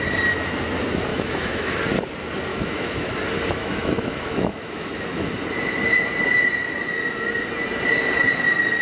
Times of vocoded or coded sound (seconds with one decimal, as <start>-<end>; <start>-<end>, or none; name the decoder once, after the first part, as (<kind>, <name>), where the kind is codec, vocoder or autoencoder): 1.1-1.8 (autoencoder, DAC-VAE); 2.5-3.1; 3.6-5.3

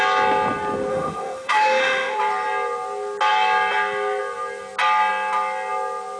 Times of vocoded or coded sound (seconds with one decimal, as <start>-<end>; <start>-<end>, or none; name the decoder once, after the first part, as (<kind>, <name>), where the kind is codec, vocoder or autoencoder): 0.9-2.2 (autoencoder, DAC-VAE)

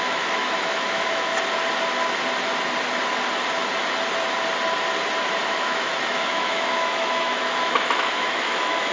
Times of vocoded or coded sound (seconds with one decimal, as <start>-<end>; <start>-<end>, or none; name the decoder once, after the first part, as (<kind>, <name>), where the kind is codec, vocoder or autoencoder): 0.0-1.3 (autoencoder, DAC-VAE); 5.4-8.9